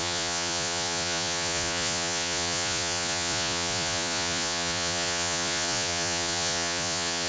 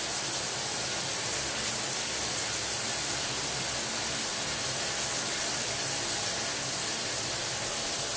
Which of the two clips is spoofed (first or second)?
first